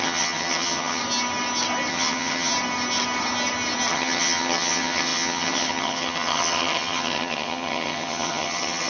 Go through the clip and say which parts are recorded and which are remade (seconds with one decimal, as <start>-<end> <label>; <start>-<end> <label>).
0.0-1.0 remade; 1.0-1.9 recorded; 1.9-2.5 remade; 2.5-3.9 recorded; 3.9-8.9 remade